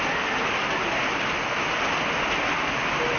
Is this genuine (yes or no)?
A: yes